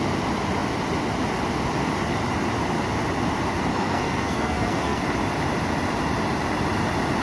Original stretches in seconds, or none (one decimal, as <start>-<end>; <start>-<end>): 0.0-3.7; 5.0-7.2